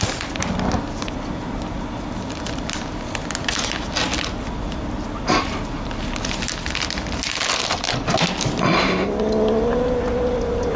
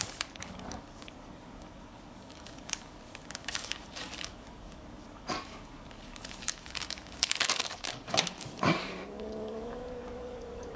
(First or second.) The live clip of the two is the first